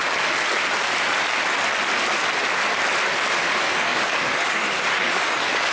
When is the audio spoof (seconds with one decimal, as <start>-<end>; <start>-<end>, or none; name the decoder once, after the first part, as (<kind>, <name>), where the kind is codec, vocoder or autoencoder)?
3.4-5.7 (codec, DAC)